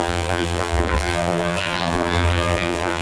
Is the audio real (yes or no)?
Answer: no